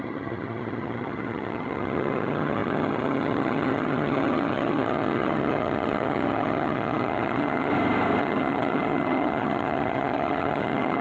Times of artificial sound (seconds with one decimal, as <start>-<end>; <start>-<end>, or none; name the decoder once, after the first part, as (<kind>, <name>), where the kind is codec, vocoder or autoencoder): 0.0-7.7 (vocoder, HiFi-GAN); 8.2-11.0